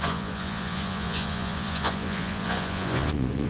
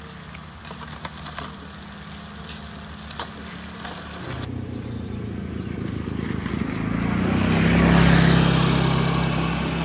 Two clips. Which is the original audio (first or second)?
second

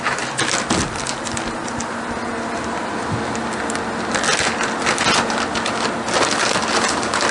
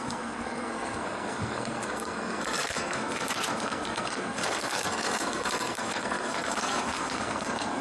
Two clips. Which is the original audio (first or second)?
first